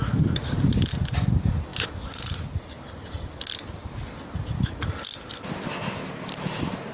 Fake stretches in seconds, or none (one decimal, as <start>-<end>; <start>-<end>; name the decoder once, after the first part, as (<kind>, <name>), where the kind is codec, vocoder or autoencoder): none